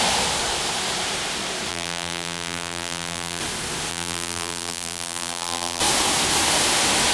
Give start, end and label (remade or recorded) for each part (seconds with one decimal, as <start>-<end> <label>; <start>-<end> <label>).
0.0-1.7 recorded; 1.7-3.4 remade; 3.4-3.9 recorded; 3.9-5.8 remade; 5.8-7.1 recorded